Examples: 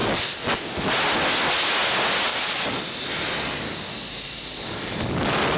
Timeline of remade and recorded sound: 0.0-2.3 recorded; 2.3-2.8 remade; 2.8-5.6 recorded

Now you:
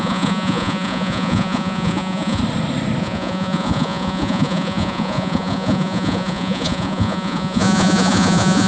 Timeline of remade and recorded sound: 0.0-2.4 remade; 2.4-3.0 recorded; 3.0-8.7 remade

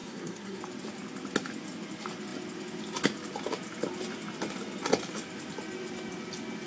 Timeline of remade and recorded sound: 0.0-0.6 remade; 0.6-6.7 recorded

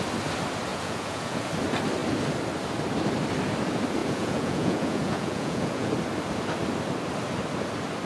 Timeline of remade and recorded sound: 0.0-0.7 recorded; 0.7-1.5 remade; 1.5-4.0 recorded; 4.0-5.9 remade; 5.9-8.1 recorded

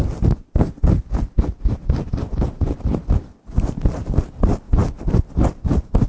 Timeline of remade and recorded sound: 0.0-0.6 remade; 0.6-1.5 recorded; 1.5-2.4 remade; 2.4-2.9 recorded; 2.9-4.0 remade; 4.0-6.1 recorded

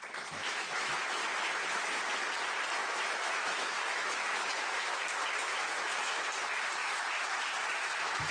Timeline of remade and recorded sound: 0.0-0.4 recorded; 0.4-2.0 remade; 2.0-2.8 recorded; 2.8-5.0 remade; 5.0-5.5 recorded; 5.5-6.3 remade; 6.3-6.8 recorded; 6.8-8.3 remade